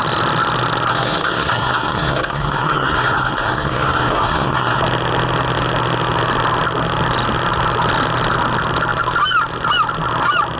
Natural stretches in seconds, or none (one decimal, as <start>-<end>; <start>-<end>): 0.0-0.9; 4.8-10.6

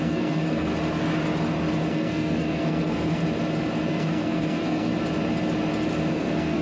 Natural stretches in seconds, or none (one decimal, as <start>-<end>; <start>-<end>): 0.7-1.9; 3.2-3.9; 4.9-6.1

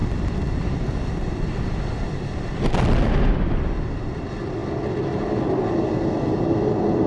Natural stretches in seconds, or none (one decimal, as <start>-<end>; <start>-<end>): 0.0-7.1

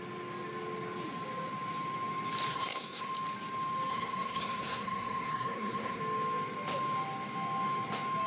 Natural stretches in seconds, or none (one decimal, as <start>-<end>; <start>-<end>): 0.0-2.5; 3.1-3.9; 6.0-8.3